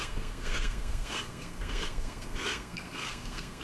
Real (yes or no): no